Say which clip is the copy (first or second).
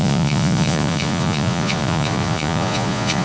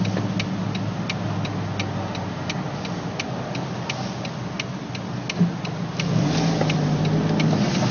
first